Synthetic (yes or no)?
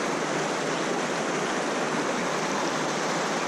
no